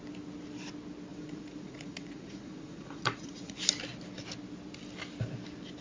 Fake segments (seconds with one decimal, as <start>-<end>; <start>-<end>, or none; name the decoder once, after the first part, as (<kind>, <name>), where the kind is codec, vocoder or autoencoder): 1.1-3.6 (vocoder, Vocos)